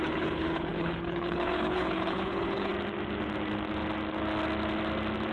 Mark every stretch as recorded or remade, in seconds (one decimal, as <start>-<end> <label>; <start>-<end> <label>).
0.0-2.7 remade; 2.7-5.3 recorded